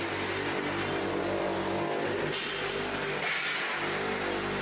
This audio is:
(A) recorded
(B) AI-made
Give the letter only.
A